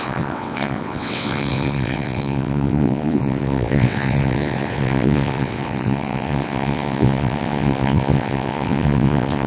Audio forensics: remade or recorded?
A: remade